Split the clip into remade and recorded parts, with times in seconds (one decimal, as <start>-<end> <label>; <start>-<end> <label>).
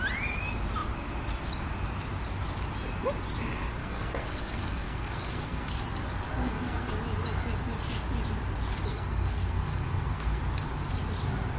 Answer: 0.0-3.8 recorded; 3.8-5.7 remade; 5.7-6.4 recorded; 6.4-6.9 remade; 6.9-8.9 recorded; 8.9-10.4 remade; 10.4-11.6 recorded